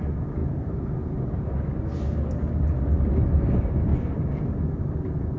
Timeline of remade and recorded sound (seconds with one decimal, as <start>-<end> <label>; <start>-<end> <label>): 0.0-5.4 recorded